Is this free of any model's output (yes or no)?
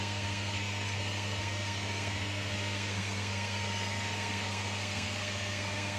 no